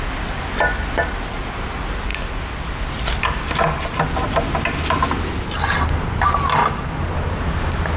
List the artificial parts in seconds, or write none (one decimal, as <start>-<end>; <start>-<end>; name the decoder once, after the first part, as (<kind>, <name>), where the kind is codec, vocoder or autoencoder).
none